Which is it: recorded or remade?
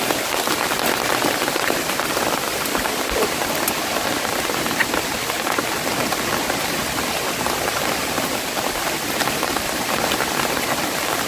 recorded